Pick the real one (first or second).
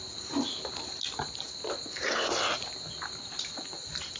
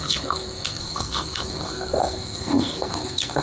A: first